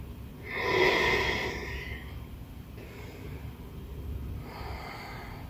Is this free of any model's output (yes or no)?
yes